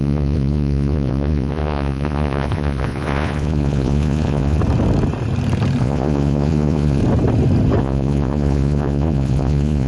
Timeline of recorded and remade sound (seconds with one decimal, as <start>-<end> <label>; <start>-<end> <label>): 0.0-4.6 remade; 4.6-5.8 recorded; 5.8-7.0 remade; 7.0-7.8 recorded; 7.8-9.9 remade